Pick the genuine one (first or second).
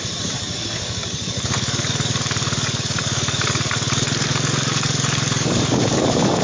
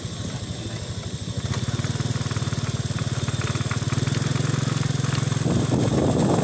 second